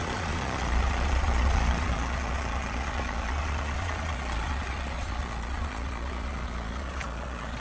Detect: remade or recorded remade